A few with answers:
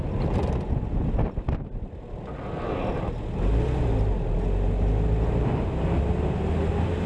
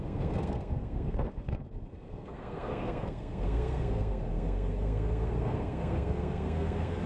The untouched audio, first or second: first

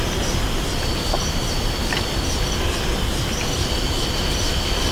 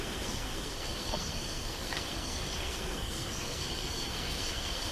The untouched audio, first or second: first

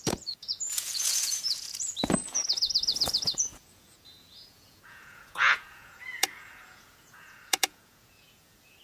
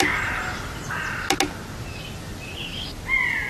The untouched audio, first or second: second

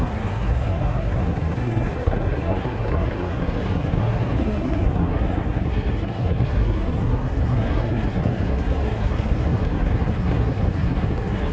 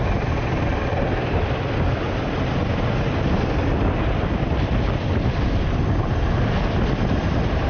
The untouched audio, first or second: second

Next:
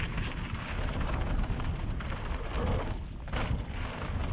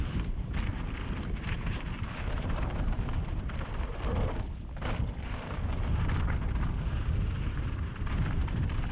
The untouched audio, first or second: first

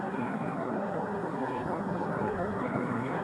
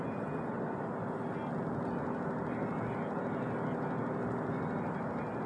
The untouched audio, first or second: second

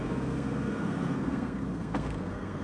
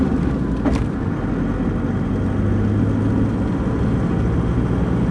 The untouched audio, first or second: second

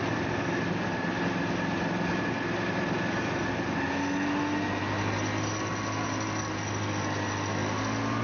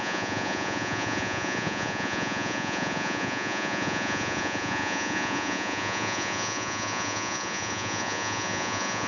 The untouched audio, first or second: first